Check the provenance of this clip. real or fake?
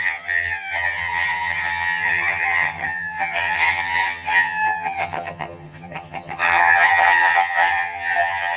fake